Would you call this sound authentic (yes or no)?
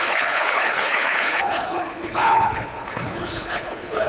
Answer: no